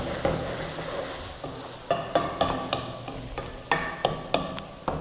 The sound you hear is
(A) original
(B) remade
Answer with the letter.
A